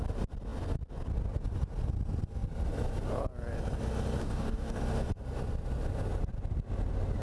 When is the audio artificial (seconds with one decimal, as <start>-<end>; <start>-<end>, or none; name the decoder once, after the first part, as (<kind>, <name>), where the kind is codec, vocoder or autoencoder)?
4.2-4.8 (codec, DAC)